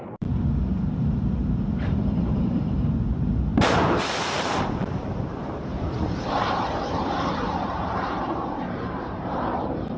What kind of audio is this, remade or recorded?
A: remade